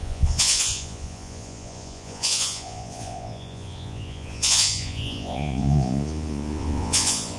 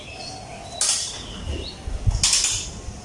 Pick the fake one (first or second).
first